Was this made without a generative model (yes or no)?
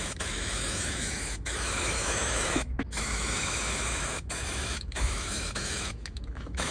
no